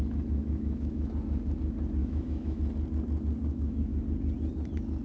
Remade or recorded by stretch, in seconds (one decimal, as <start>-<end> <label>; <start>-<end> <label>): 0.0-0.4 recorded; 0.4-1.1 remade; 1.1-2.0 recorded; 2.0-2.6 remade; 2.6-3.5 recorded; 3.5-4.0 remade; 4.0-5.0 recorded